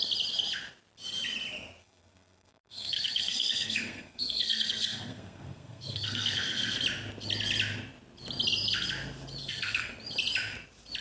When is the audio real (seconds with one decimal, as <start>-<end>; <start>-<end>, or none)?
0.0-1.8; 6.8-9.4; 9.9-11.0